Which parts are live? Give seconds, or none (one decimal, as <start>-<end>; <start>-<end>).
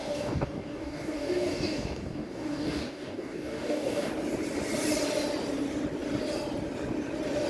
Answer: 4.1-7.5